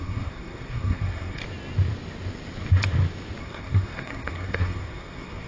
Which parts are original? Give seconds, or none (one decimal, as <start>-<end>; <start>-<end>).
1.4-3.4